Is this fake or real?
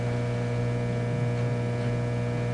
real